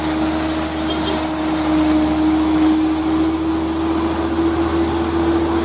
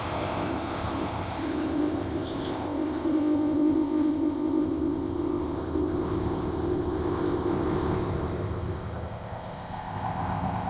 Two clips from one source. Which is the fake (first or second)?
second